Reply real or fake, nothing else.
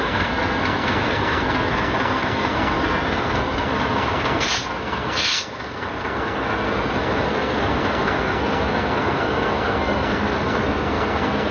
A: fake